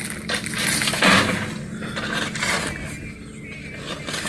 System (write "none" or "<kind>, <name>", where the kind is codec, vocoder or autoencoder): none